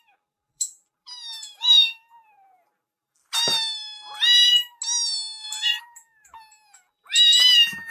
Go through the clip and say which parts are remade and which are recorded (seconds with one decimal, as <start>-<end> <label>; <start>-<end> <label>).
0.0-3.2 remade; 3.2-5.8 recorded; 5.8-7.9 remade